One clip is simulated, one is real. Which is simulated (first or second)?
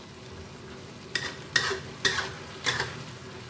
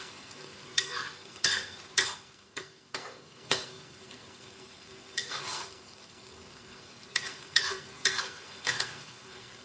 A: second